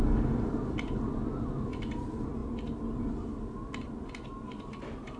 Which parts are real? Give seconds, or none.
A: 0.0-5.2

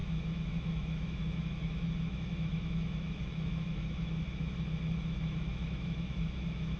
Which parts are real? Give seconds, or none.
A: none